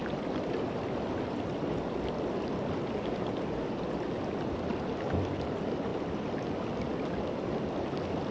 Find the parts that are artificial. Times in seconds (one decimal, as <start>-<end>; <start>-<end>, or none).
none